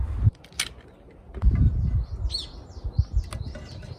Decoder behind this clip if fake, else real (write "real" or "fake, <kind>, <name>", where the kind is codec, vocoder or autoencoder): real